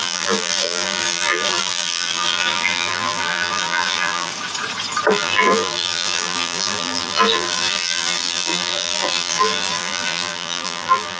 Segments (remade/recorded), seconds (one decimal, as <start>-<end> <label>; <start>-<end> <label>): 0.0-4.3 remade; 4.3-5.1 recorded; 5.1-11.2 remade

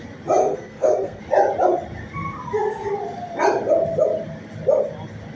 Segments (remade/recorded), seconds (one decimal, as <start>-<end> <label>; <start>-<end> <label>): 0.0-0.4 recorded; 0.4-1.2 remade; 1.2-5.4 recorded

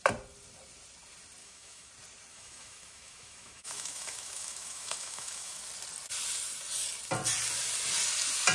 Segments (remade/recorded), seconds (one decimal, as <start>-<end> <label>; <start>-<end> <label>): 0.0-1.4 recorded; 1.4-1.9 remade; 1.9-2.3 recorded; 2.3-5.6 remade; 5.6-8.5 recorded

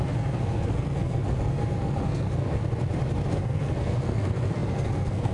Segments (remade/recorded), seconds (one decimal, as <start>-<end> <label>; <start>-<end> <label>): 0.0-2.6 remade; 2.6-3.3 recorded; 3.3-5.3 remade

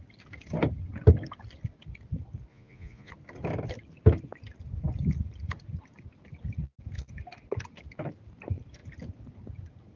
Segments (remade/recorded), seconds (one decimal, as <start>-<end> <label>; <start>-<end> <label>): 0.0-2.5 recorded; 2.5-3.1 remade; 3.1-10.0 recorded

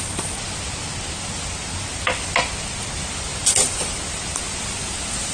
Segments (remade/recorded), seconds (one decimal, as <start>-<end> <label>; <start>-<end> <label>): 0.0-5.3 recorded